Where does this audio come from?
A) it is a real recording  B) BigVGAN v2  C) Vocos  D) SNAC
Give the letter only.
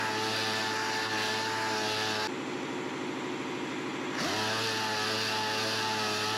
A